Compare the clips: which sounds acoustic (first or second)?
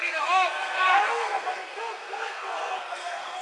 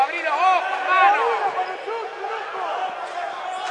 second